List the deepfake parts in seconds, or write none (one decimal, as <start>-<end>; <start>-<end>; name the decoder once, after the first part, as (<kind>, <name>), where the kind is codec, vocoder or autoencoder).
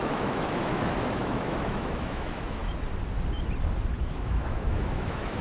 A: 0.0-2.6 (autoencoder, DAC-VAE); 4.0-5.4